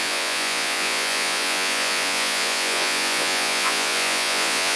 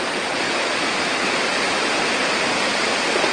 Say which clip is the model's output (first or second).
first